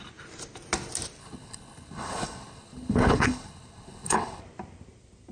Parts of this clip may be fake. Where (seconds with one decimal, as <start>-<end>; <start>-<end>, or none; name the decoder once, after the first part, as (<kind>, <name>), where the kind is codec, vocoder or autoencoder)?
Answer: 1.2-4.4 (codec, HILCodec)